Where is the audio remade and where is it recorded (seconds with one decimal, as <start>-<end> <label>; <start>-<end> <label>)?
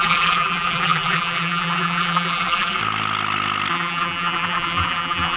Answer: 0.0-2.8 remade; 2.8-3.7 recorded; 3.7-5.4 remade